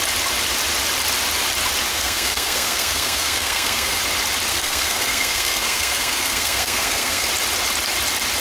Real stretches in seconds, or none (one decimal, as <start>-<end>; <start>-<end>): 0.0-1.9; 4.0-4.5; 7.3-8.4